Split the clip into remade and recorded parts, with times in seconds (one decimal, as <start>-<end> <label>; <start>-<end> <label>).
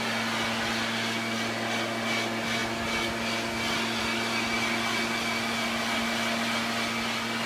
0.0-7.5 recorded